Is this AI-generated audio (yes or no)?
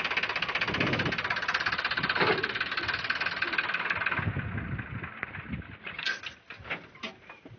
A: no